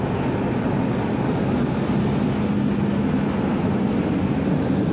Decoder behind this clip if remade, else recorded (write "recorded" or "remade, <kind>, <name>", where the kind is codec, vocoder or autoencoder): recorded